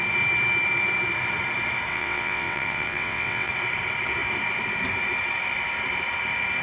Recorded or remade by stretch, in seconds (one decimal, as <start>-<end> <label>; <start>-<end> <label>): 0.0-1.9 recorded; 1.9-3.5 remade; 3.5-6.6 recorded

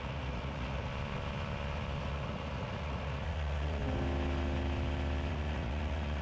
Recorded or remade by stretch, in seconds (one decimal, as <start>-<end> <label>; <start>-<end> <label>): 0.0-0.9 remade; 0.9-2.0 recorded; 2.0-3.8 remade; 3.8-5.3 recorded; 5.3-6.2 remade

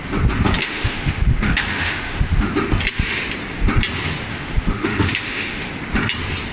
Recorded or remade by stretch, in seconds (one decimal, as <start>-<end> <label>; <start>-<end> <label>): 0.0-0.6 recorded; 0.6-2.5 remade; 2.5-4.3 recorded; 4.3-5.7 remade; 5.7-6.5 recorded

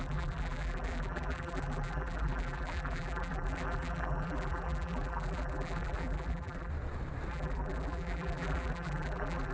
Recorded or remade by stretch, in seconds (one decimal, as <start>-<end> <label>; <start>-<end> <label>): 0.0-6.7 remade; 6.7-7.3 recorded; 7.3-9.5 remade

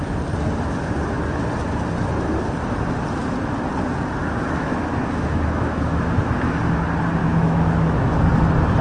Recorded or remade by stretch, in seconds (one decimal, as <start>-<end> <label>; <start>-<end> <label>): 0.0-4.2 recorded; 4.2-6.6 remade; 6.6-7.2 recorded; 7.2-8.1 remade; 8.1-8.8 recorded